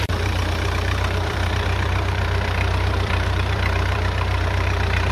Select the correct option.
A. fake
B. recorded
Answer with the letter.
A